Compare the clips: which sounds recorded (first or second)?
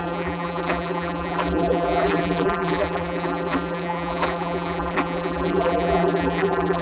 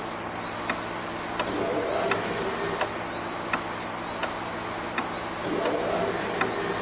second